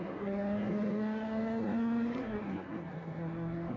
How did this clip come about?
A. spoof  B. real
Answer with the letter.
A